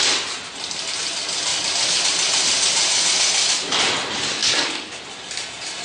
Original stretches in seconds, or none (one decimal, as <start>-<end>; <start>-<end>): 0.0-1.5; 2.0-4.4; 5.0-5.8